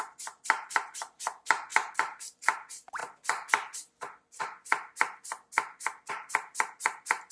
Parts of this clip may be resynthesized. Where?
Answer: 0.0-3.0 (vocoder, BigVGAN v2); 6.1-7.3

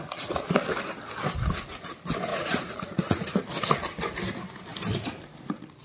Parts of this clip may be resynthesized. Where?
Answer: 2.3-3.4 (vocoder, Vocos)

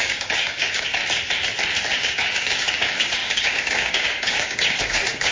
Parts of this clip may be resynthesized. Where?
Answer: 0.0-1.0 (codec, DAC); 1.9-5.3

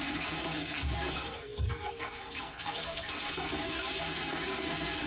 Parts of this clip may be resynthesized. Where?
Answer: 0.0-5.1 (codec, SNAC)

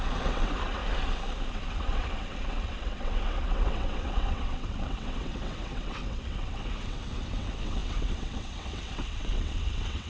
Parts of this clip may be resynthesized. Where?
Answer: 0.0-0.8 (vocoder, WaveNeXt); 1.5-10.1

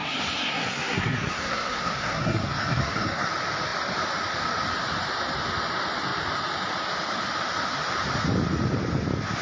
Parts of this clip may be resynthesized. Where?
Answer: 0.0-3.3 (codec, SNAC)